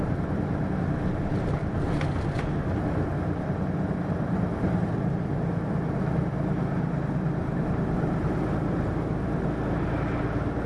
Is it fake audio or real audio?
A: real